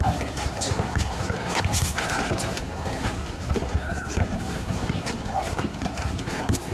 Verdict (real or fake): fake